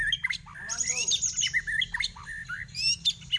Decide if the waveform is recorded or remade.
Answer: recorded